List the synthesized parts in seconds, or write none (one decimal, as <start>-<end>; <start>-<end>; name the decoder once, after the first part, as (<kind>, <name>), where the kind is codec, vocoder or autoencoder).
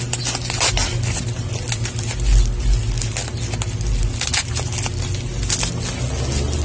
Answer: none